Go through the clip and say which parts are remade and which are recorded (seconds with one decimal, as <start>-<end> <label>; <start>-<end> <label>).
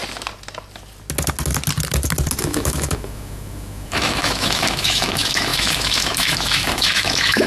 0.0-2.4 recorded; 2.4-7.5 remade